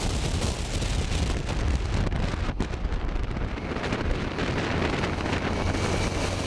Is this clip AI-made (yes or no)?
no